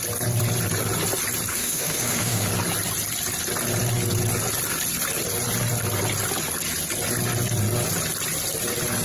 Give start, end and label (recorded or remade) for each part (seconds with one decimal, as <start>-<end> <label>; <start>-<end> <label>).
0.0-1.5 recorded; 1.5-2.5 remade; 2.5-9.0 recorded